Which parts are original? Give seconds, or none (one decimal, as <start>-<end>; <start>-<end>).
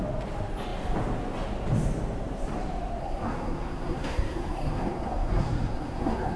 0.0-3.0